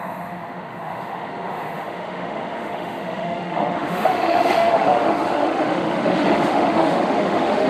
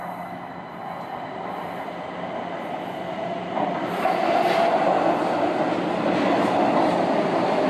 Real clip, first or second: second